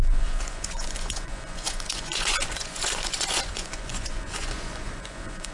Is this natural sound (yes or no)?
no